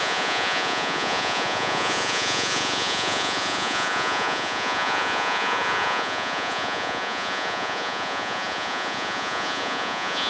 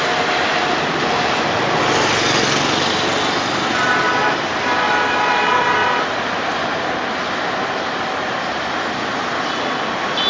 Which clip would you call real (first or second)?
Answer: second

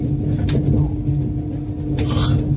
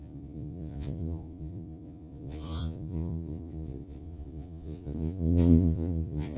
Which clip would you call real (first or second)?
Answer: first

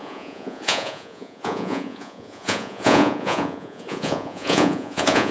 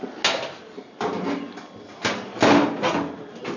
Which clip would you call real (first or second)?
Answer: second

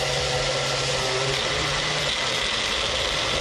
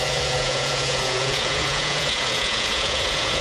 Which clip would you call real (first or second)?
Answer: first